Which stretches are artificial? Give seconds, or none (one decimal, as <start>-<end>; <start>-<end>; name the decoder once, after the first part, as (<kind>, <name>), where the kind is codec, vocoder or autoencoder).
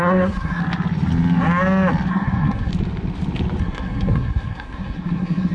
0.0-0.6 (codec, SNAC); 2.1-2.7; 3.6-5.5